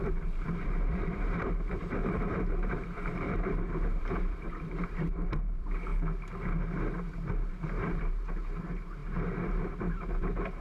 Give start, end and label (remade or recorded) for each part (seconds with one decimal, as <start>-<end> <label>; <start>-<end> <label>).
0.0-5.9 remade; 5.9-7.5 recorded; 7.5-10.6 remade